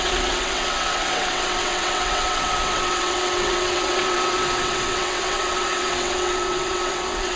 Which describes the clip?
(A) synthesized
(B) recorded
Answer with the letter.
A